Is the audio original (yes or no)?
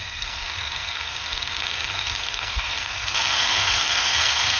no